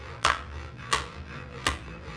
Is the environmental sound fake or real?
fake